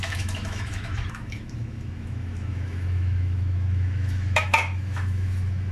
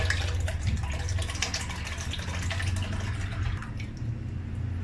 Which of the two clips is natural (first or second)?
second